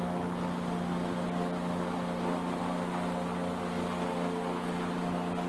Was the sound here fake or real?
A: real